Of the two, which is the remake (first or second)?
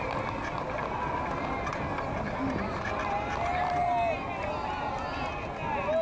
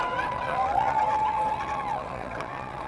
second